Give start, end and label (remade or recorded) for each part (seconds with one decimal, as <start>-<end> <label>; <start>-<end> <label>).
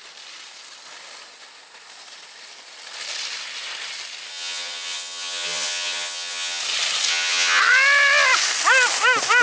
0.0-4.3 recorded; 4.3-6.6 remade; 6.6-7.1 recorded; 7.1-7.6 remade; 7.6-9.4 recorded